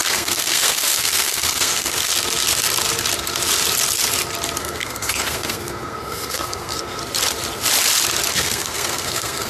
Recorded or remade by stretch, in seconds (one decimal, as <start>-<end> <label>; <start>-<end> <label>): 0.0-2.1 remade; 2.1-4.6 recorded; 4.6-7.0 remade; 7.0-8.3 recorded; 8.3-9.5 remade